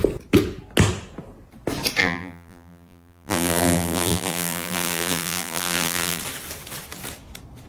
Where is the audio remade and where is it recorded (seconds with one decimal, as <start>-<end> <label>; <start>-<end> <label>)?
0.0-2.0 recorded; 2.0-6.2 remade; 6.2-7.7 recorded